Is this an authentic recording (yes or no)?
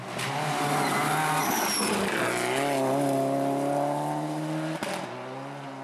yes